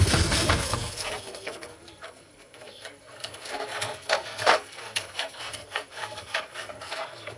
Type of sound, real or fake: fake